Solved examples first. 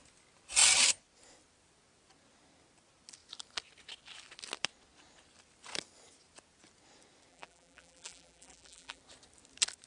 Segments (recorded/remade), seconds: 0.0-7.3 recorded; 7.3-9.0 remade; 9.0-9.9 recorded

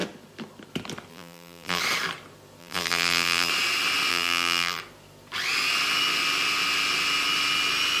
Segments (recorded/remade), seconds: 0.0-1.1 recorded; 1.1-1.8 remade; 1.8-2.6 recorded; 2.6-3.5 remade; 3.5-4.1 recorded; 4.1-4.8 remade; 4.8-8.0 recorded

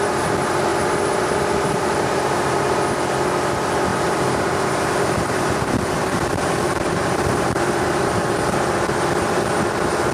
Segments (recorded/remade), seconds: 0.0-0.7 recorded; 0.7-2.8 remade; 2.8-3.9 recorded; 3.9-8.4 remade; 8.4-10.1 recorded

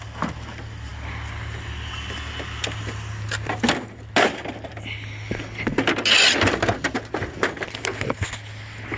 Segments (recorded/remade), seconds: 0.0-9.0 recorded

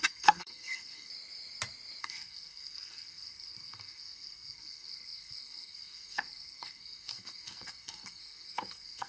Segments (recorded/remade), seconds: 0.0-1.1 remade; 1.1-2.0 recorded; 2.0-9.1 remade

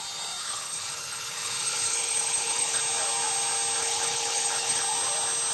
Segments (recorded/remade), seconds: 0.0-0.4 recorded; 0.4-2.8 remade; 2.8-3.8 recorded; 3.8-4.8 remade; 4.8-5.5 recorded

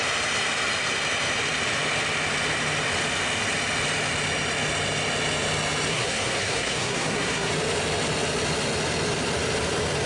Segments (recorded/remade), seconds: 0.0-5.9 recorded; 5.9-7.5 remade; 7.5-10.1 recorded

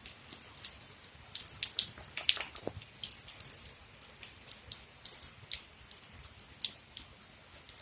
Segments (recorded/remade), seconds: 0.0-7.8 recorded